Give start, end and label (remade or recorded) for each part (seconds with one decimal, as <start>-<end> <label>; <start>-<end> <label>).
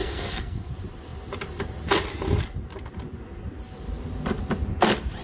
0.0-0.7 remade; 0.7-5.2 recorded